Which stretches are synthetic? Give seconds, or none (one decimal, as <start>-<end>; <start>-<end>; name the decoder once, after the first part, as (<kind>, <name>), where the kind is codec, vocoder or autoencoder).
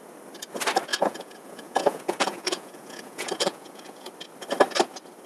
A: 0.9-4.1 (vocoder, Vocos)